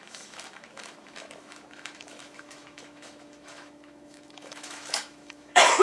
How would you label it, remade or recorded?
remade